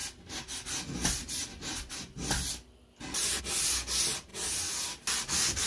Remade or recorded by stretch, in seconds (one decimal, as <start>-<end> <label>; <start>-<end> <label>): 0.0-5.7 recorded